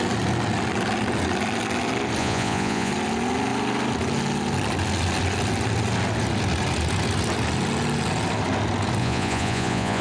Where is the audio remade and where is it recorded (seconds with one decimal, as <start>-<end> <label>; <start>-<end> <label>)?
0.0-2.2 recorded; 2.2-2.9 remade; 2.9-9.0 recorded; 9.0-10.0 remade